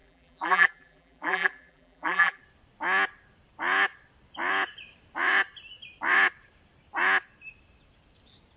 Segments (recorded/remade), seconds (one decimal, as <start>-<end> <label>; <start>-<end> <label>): 0.0-2.4 remade; 2.4-8.6 recorded